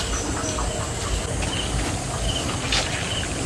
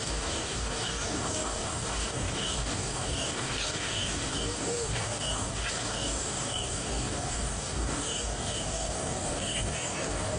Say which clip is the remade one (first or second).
second